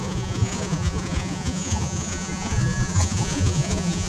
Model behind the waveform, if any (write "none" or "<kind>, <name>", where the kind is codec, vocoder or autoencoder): vocoder, Vocos